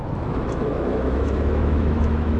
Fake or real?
fake